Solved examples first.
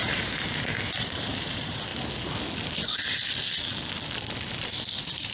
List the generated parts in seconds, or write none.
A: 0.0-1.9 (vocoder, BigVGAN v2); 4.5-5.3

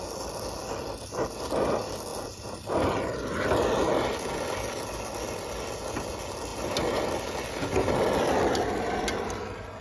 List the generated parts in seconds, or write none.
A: none

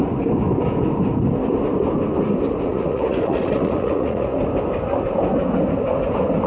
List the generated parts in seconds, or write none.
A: 2.7-4.4 (vocoder, Vocos)

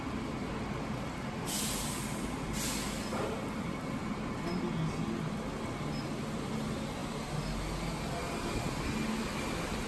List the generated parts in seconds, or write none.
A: none

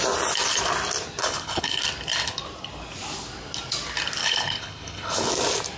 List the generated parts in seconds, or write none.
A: 1.2-1.8 (codec, HILCodec); 4.2-5.3

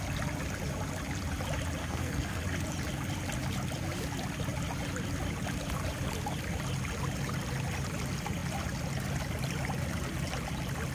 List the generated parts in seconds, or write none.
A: 1.8-2.4 (codec, SNAC)

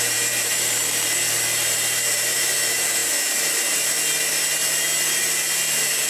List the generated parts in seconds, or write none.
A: none

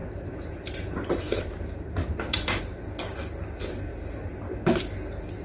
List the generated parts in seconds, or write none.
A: 0.0-2.6 (vocoder, BigVGAN v2); 3.9-4.4